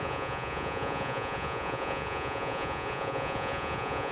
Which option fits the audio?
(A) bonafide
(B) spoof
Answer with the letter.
B